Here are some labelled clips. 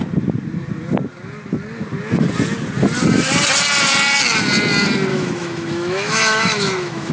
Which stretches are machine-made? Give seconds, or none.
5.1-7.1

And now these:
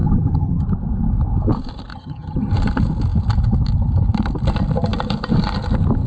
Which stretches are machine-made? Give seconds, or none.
0.0-0.6; 1.9-2.5

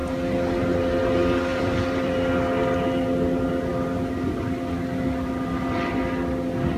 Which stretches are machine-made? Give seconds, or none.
1.5-2.3

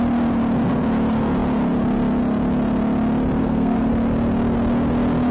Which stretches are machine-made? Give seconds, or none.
3.4-3.9

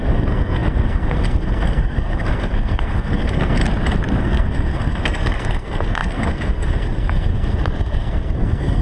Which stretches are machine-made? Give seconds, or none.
0.0-3.6; 4.2-8.8